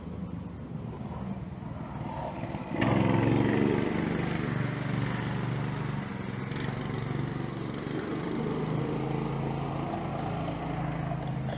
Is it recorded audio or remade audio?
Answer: recorded